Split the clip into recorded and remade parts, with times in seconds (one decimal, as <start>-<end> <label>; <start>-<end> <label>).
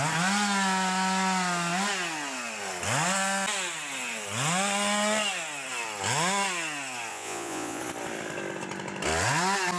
0.0-7.1 recorded; 7.1-7.8 remade; 7.8-9.8 recorded